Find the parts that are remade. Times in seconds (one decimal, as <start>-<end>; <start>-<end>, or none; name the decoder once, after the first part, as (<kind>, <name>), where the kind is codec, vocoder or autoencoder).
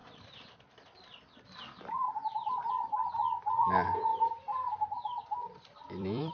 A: 0.0-2.7 (vocoder, BigVGAN v2); 4.1-6.3